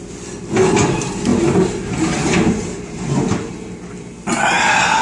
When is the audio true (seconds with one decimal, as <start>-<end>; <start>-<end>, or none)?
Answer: 0.0-1.3; 3.5-5.0